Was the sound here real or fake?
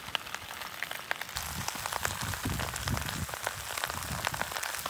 real